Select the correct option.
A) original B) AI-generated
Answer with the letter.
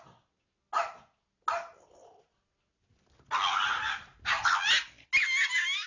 A